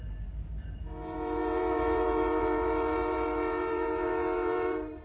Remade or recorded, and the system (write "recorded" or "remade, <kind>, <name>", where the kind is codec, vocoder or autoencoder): remade, vocoder, BigVGAN v2